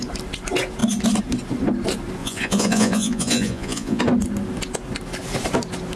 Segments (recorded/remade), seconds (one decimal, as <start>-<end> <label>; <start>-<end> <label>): 0.0-2.2 recorded; 2.2-4.0 remade; 4.0-6.0 recorded